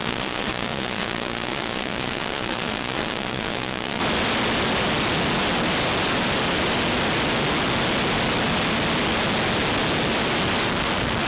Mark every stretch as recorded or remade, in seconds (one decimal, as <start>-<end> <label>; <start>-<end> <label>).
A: 0.0-4.0 remade; 4.0-11.3 recorded